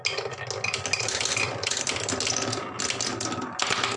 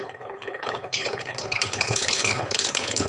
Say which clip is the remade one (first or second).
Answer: second